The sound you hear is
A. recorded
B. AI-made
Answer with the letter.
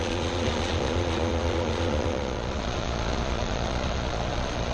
B